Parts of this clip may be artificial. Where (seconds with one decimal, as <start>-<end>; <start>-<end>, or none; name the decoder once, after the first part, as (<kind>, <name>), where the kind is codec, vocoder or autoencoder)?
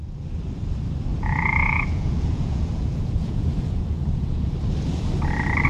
1.1-4.5 (vocoder, Vocos)